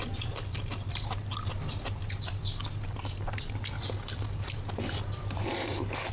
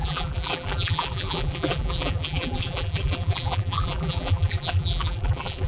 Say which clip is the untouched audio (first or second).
first